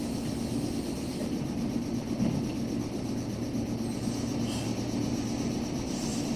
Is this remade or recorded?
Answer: recorded